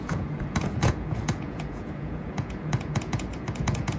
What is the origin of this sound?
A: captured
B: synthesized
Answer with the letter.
B